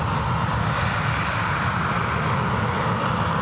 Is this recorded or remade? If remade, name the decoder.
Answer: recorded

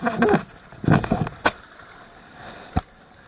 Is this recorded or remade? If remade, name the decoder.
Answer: recorded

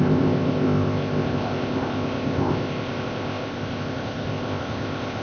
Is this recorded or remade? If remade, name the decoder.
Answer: remade, codec, ZipCodec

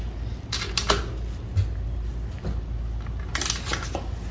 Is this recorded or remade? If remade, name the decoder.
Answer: recorded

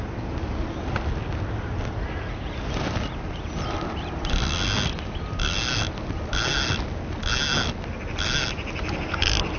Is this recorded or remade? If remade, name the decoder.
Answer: recorded